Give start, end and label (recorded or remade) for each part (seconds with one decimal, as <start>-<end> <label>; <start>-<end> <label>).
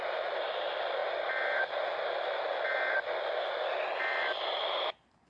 0.0-5.3 recorded